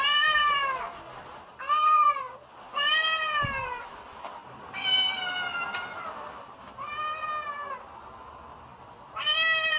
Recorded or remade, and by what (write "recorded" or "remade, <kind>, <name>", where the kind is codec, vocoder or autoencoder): recorded